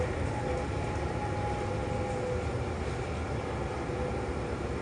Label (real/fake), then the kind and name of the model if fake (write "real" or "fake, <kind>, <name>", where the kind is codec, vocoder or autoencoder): real